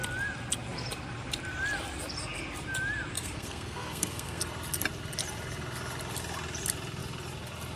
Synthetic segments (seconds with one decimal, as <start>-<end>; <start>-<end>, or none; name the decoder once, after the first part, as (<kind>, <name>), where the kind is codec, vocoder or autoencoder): 3.1-4.4 (codec, SNAC)